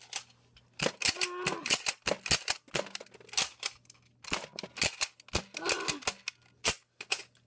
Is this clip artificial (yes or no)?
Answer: no